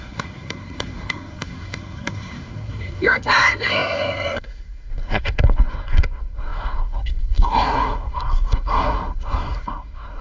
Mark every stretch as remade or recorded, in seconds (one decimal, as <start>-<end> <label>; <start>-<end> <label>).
0.0-10.2 remade